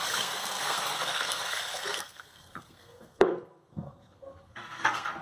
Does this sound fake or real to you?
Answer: fake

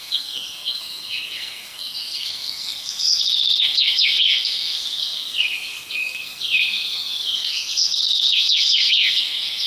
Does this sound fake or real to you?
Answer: fake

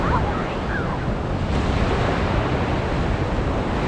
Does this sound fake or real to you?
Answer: real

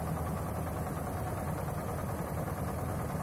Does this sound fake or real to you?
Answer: real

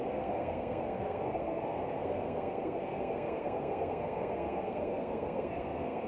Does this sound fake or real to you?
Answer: fake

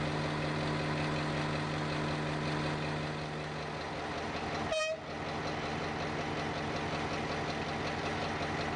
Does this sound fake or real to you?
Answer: real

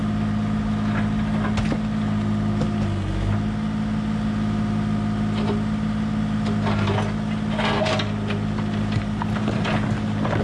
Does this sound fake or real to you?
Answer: real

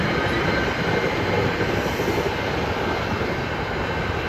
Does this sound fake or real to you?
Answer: real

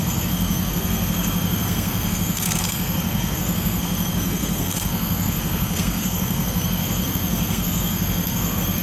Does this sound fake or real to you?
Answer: fake